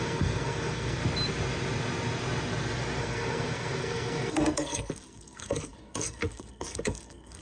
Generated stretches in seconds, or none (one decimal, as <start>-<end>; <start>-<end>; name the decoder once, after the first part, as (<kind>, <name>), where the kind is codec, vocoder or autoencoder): 0.0-1.0 (codec, SNAC); 3.0-7.4